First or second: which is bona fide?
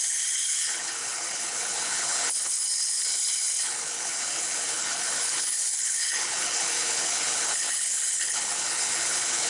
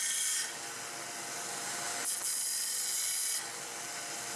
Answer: second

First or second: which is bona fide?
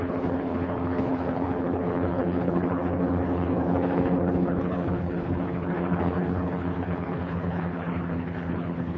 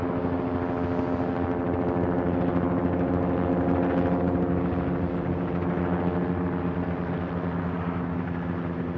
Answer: second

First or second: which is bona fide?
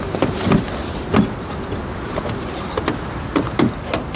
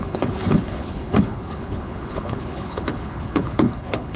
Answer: first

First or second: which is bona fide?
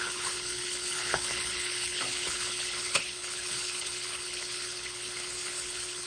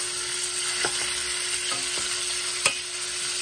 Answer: second